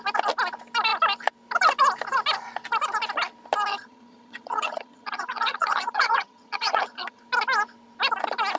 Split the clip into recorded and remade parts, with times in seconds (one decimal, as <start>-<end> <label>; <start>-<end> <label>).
0.0-3.7 recorded; 3.7-7.2 remade; 7.2-8.6 recorded